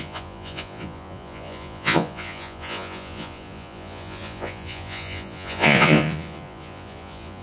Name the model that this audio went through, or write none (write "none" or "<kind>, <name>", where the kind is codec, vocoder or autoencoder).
vocoder, Vocos